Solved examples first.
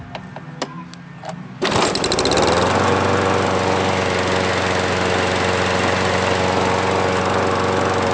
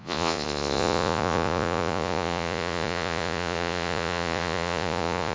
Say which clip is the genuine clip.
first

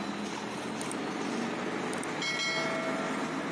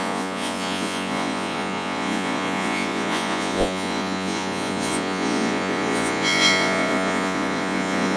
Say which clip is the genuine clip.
first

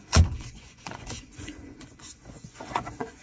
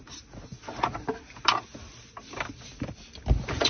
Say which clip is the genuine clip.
second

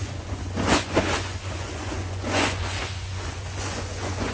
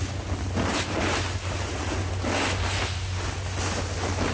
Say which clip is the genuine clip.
second